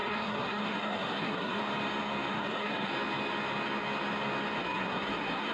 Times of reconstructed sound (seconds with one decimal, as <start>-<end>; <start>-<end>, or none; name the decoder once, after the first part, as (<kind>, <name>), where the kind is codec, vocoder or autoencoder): 0.0-1.6 (codec, SNAC); 2.3-2.9; 4.6-5.5